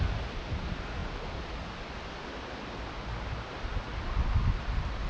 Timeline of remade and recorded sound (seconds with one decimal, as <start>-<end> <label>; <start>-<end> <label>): 0.0-5.1 recorded